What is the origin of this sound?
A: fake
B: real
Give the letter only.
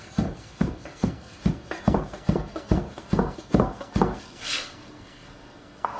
A